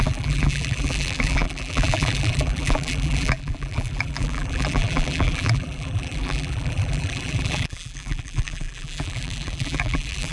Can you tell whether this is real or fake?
fake